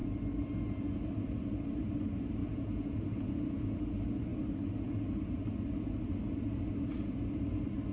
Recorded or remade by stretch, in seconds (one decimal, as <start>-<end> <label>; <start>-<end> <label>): 0.0-2.4 recorded; 2.4-3.8 remade; 3.8-7.9 recorded